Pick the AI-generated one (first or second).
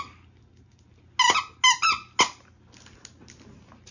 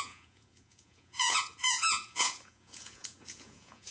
second